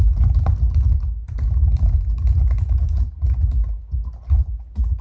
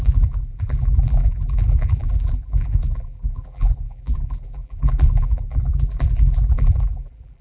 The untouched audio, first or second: first